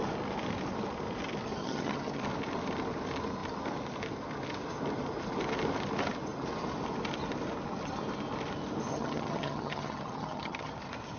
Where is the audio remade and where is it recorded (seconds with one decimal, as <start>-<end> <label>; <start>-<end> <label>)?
0.0-1.6 recorded; 1.6-2.2 remade; 2.2-8.9 recorded; 8.9-10.7 remade; 10.7-11.2 recorded